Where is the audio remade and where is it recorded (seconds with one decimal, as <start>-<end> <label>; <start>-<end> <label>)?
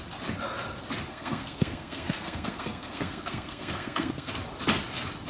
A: 0.0-1.1 recorded; 1.1-4.3 remade; 4.3-5.3 recorded